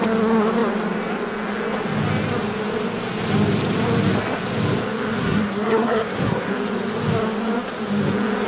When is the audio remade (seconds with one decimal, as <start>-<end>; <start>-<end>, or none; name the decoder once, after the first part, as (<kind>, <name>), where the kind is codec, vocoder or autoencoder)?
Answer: 5.2-6.5 (codec, SNAC)